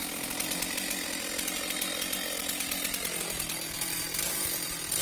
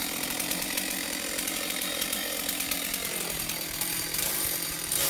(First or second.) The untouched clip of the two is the first